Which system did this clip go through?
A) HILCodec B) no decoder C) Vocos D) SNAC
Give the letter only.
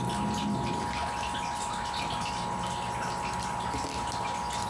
B